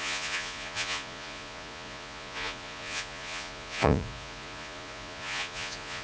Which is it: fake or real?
fake